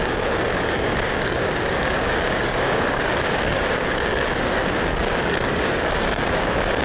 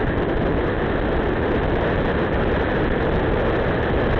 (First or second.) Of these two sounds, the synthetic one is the first